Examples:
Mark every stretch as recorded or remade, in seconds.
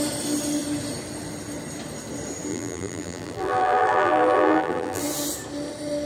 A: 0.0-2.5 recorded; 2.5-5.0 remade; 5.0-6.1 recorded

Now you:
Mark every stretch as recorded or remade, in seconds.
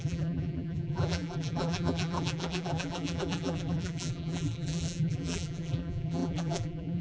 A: 0.0-7.0 remade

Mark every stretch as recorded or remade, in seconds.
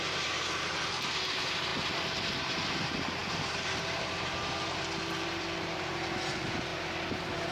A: 0.0-6.7 remade; 6.7-7.5 recorded